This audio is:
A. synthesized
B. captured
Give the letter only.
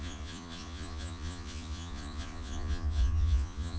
A